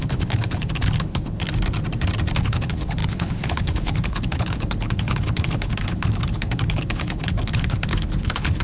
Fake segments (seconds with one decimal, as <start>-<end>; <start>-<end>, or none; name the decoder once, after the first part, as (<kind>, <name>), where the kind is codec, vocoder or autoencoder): 0.0-1.4 (codec, HILCodec); 2.4-8.6